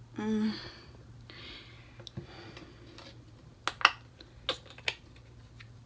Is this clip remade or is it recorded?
recorded